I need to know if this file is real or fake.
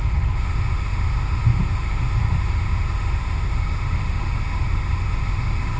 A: fake